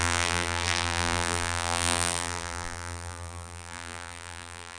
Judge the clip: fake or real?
fake